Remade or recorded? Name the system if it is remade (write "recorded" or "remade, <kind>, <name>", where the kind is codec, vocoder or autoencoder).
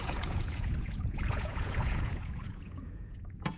remade, vocoder, Vocos